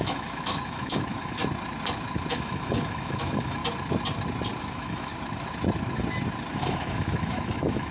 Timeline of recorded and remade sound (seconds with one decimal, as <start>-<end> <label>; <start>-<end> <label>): 0.0-1.4 remade; 1.4-2.3 recorded; 2.3-3.6 remade; 3.6-4.6 recorded; 4.6-5.1 remade; 5.1-6.6 recorded; 6.6-7.9 remade